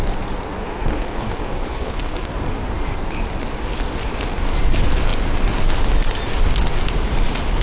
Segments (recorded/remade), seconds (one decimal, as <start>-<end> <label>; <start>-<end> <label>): 0.0-0.6 recorded; 0.6-2.3 remade; 2.3-7.6 recorded